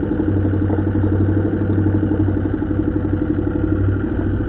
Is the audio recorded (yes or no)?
yes